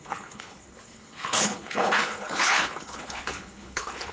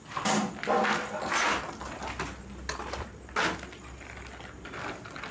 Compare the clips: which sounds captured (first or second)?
second